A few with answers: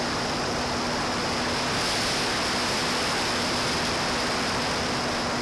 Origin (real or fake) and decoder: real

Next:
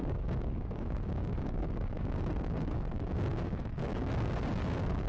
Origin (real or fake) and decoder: fake, codec, DAC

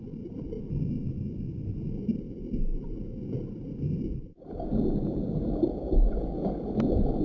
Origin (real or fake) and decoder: real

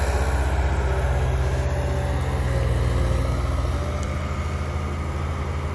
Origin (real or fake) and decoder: real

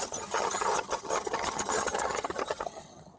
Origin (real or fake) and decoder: fake, vocoder, HiFi-GAN